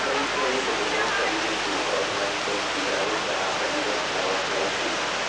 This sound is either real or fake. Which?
real